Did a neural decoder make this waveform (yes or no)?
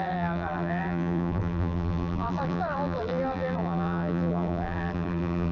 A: yes